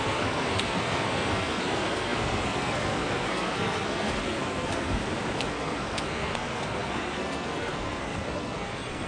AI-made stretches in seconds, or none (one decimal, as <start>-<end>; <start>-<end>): 0.0-5.0; 5.5-9.1